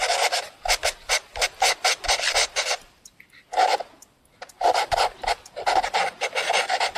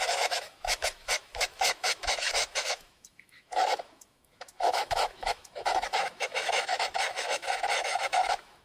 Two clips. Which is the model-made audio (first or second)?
second